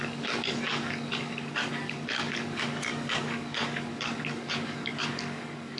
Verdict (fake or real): fake